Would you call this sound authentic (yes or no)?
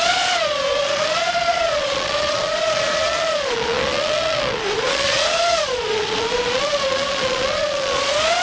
no